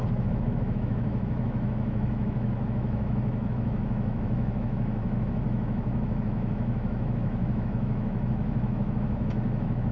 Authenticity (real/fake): fake